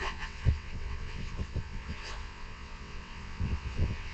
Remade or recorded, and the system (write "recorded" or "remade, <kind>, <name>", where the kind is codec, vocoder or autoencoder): remade, vocoder, WaveNeXt